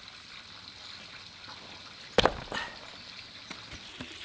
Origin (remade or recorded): recorded